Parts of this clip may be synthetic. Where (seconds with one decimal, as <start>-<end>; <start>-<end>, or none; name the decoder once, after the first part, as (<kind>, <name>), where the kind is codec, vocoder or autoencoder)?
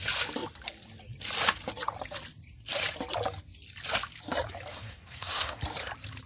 4.7-5.6 (codec, SNAC)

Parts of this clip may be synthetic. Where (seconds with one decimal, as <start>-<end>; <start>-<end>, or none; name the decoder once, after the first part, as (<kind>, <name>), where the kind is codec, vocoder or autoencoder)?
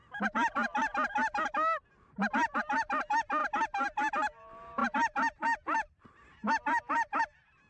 none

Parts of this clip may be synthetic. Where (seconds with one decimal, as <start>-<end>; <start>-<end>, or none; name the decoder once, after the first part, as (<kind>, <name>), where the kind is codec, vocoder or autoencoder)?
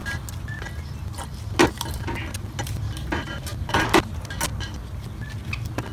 none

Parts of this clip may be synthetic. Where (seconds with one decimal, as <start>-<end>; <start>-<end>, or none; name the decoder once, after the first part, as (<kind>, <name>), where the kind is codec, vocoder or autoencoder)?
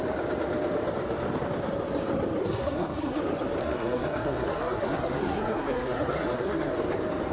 2.4-3.2 (codec, SNAC); 3.6-6.7